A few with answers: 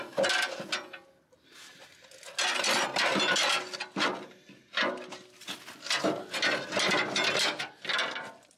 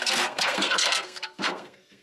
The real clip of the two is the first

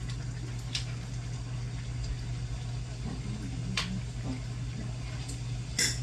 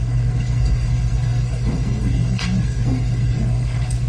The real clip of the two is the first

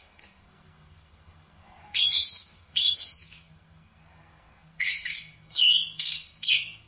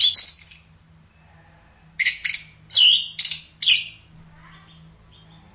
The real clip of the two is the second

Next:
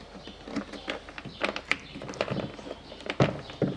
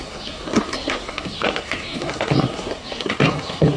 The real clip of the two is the first